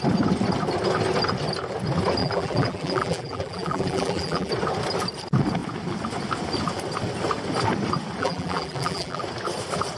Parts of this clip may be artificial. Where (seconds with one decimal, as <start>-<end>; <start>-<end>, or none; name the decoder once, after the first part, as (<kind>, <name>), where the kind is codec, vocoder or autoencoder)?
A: 2.2-4.5 (vocoder, BigVGAN v2); 8.2-9.2

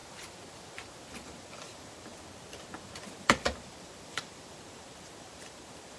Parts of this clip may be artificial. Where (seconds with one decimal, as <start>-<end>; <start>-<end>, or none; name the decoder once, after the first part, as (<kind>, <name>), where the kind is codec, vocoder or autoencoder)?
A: 1.1-2.1 (vocoder, BigVGAN v2); 3.2-6.0

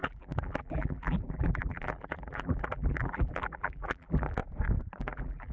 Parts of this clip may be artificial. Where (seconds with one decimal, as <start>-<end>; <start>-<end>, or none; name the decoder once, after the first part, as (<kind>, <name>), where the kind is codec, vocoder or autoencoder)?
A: 0.0-4.4 (vocoder, BigVGAN v2); 5.0-5.5

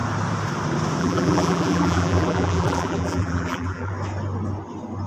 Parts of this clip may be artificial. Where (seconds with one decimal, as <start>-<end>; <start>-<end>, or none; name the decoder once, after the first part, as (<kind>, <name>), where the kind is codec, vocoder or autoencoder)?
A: 1.0-3.9 (vocoder, BigVGAN v2)

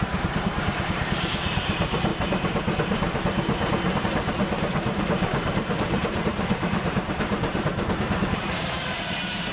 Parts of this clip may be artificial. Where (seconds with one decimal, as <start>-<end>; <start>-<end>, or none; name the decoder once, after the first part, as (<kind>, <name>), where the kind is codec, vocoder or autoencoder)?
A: 0.0-2.1 (vocoder, BigVGAN v2); 4.0-9.5

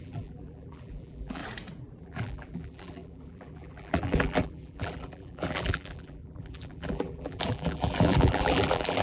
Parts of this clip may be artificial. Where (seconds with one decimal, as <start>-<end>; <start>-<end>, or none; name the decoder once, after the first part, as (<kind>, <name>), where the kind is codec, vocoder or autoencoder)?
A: 0.0-1.4 (vocoder, BigVGAN v2); 2.0-9.0

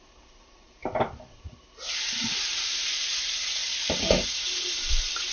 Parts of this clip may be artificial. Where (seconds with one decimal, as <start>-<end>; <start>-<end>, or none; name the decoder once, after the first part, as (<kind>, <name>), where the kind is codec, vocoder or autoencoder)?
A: 0.0-0.8 (vocoder, BigVGAN v2); 2.1-3.6